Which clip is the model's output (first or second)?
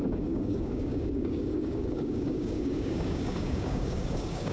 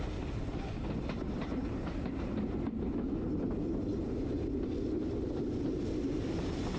first